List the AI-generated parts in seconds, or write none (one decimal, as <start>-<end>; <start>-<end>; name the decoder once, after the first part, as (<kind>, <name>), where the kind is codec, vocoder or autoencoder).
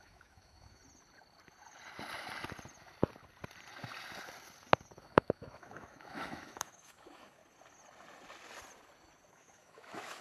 0.0-0.8 (autoencoder, DAC-VAE); 5.0-7.4; 9.3-10.2